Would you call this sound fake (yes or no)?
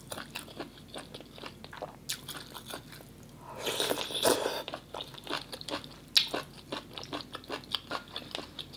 no